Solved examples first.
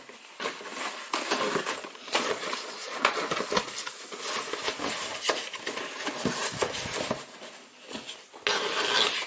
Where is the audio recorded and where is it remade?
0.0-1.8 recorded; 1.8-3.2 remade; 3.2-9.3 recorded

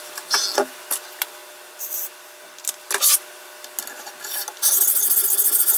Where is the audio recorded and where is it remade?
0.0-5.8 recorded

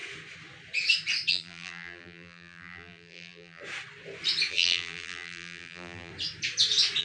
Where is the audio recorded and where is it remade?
0.0-1.3 recorded; 1.3-3.6 remade; 3.6-4.5 recorded; 4.5-6.1 remade; 6.1-7.0 recorded